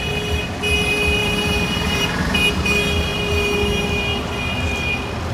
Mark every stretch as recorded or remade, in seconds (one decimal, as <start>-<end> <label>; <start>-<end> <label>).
0.0-1.2 recorded; 1.2-2.2 remade; 2.2-5.3 recorded